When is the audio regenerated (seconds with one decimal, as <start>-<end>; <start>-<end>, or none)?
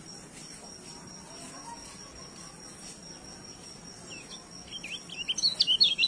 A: none